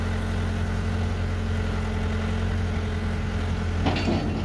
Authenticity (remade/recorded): recorded